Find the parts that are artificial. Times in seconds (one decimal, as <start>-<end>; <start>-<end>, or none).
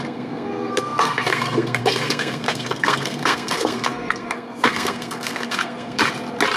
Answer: 0.0-6.0